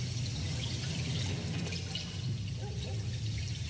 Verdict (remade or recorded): recorded